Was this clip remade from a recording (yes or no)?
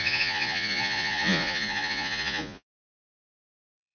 yes